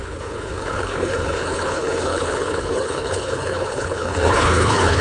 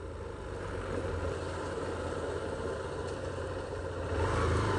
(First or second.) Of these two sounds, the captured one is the second